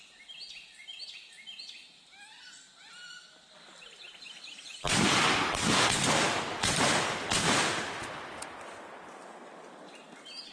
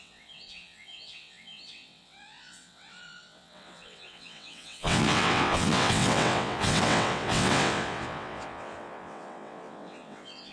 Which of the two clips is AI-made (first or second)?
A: second